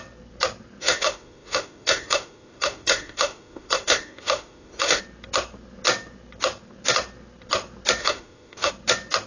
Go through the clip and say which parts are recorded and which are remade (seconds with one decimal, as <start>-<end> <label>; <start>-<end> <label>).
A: 0.0-0.8 recorded; 0.8-5.0 remade; 5.0-8.0 recorded; 8.0-8.7 remade; 8.7-9.3 recorded